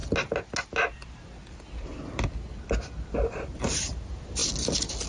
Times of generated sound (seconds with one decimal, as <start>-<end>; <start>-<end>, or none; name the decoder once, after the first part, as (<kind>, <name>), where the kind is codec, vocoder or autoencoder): 3.1-4.4 (vocoder, BigVGAN v2)